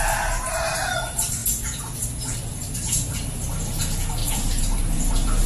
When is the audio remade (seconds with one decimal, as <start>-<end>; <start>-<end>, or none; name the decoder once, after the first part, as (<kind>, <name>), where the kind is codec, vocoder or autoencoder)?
0.0-1.4 (vocoder, BigVGAN v2); 2.5-5.5